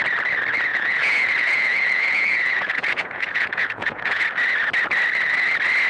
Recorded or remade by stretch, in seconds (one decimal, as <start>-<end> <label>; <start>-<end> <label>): 0.0-0.7 recorded; 0.7-4.2 remade; 4.2-5.9 recorded